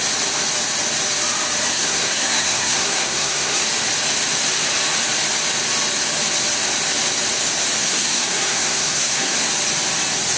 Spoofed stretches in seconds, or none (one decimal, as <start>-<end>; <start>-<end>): 1.7-3.6; 7.8-9.5